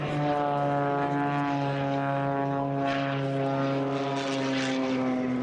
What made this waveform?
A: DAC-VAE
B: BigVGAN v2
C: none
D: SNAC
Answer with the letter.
C